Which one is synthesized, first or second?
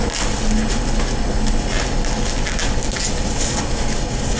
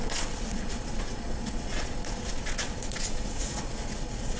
second